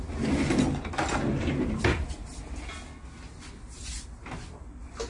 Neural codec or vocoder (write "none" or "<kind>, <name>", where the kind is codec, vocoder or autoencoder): none